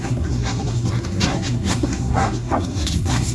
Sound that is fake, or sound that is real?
fake